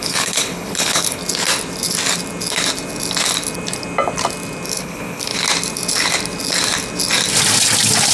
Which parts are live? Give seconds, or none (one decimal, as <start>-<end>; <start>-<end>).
1.2-4.8; 5.3-8.1